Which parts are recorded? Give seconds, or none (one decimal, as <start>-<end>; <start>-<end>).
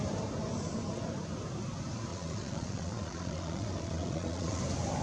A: 0.0-2.1; 4.6-5.0